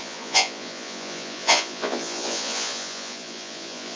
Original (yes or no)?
no